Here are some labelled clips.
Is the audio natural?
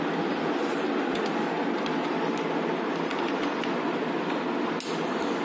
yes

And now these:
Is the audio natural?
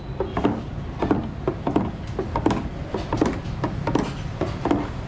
yes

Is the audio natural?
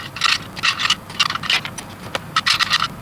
yes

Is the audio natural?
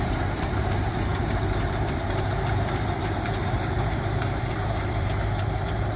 no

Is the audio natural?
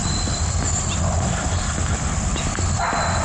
yes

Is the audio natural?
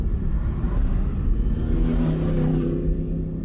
yes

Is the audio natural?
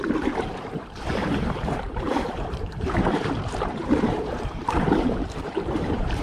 no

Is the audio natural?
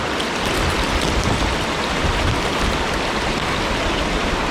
yes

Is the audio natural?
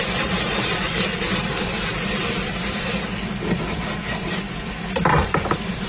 no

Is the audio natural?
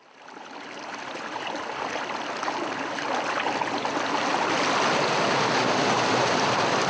yes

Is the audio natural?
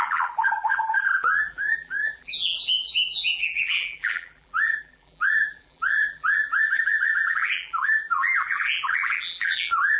no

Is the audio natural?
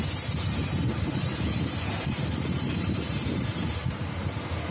no